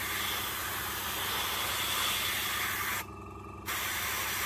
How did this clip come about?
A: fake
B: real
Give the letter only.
B